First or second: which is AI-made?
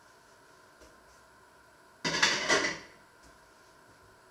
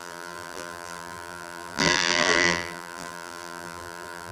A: second